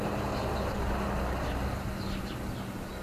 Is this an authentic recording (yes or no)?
yes